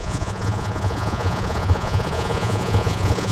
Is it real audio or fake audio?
fake